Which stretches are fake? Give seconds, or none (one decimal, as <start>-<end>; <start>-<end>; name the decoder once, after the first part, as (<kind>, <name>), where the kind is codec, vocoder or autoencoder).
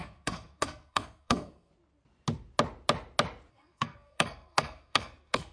0.0-1.7 (codec, SNAC); 3.5-5.5